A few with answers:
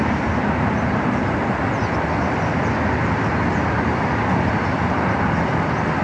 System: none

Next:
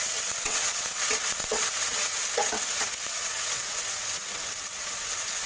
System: vocoder, WaveNeXt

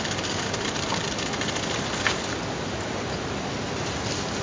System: none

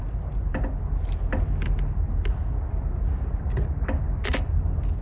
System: none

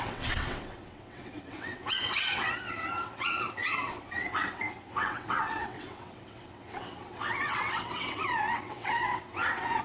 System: vocoder, WaveNeXt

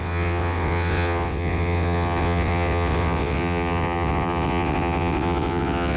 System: vocoder, WaveNeXt